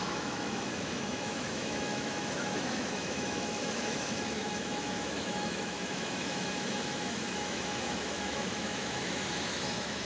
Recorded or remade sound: remade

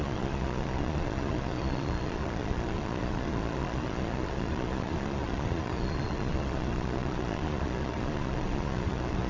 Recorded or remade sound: remade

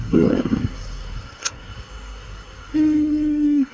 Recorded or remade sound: remade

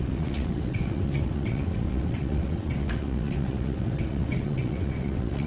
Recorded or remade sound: remade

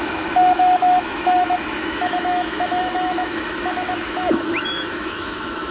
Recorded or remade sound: remade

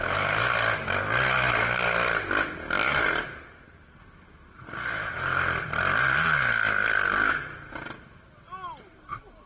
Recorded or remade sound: recorded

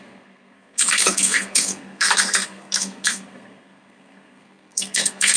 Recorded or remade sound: remade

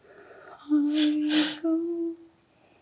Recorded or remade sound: recorded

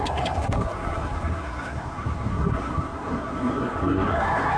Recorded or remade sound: remade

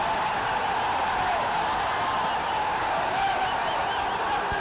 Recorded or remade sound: recorded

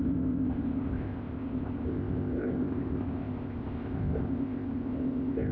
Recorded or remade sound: remade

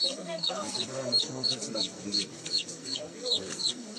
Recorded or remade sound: remade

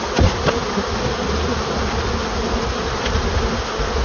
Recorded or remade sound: recorded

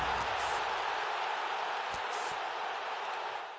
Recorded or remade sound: recorded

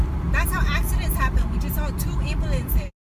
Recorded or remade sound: recorded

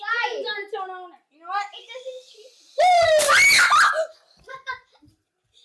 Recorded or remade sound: recorded